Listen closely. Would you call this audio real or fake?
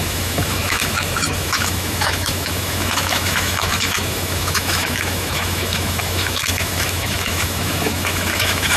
fake